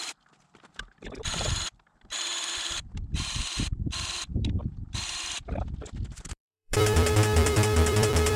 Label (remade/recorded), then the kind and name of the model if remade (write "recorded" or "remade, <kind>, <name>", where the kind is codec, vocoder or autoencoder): remade, vocoder, BigVGAN v2